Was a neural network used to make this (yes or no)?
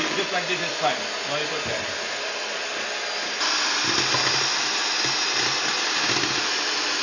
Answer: no